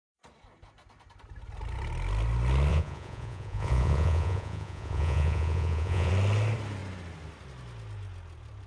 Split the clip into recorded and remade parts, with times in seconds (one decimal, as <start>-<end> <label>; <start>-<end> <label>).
0.0-2.7 recorded; 2.7-6.1 remade; 6.1-8.7 recorded